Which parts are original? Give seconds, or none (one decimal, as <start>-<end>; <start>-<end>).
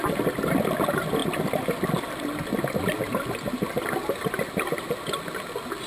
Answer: 0.0-5.9